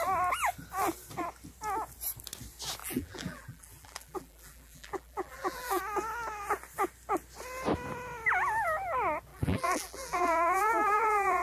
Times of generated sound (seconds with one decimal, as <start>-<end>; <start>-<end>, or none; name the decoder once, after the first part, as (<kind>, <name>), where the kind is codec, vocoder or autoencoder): 2.8-5.8 (vocoder, BigVGAN v2); 9.3-11.4